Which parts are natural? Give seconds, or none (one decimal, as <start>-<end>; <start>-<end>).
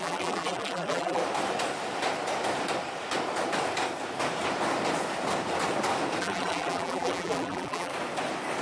1.2-6.2; 7.9-8.6